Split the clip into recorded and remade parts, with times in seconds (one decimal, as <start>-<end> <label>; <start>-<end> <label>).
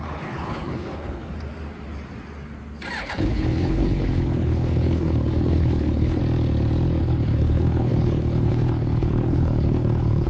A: 0.0-1.3 remade; 1.3-3.0 recorded; 3.0-6.2 remade; 6.2-7.0 recorded; 7.0-10.3 remade